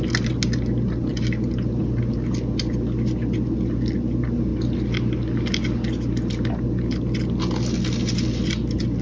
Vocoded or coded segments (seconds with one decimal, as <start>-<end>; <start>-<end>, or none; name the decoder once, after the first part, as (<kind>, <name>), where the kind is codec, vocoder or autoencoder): none